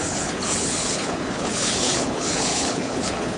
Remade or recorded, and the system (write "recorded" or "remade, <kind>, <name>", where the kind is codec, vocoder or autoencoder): remade, codec, HILCodec